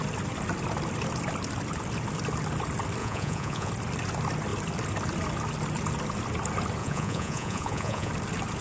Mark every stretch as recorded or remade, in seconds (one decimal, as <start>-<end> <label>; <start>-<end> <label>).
0.0-3.0 recorded; 3.0-3.7 remade; 3.7-6.8 recorded; 6.8-8.1 remade; 8.1-8.6 recorded